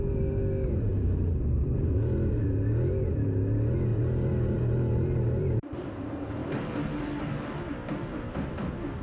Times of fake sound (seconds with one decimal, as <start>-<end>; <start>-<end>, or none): 0.9-1.6; 3.9-5.9